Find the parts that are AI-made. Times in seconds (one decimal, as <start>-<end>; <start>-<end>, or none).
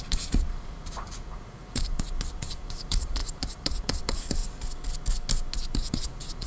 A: 0.0-4.4; 5.9-6.5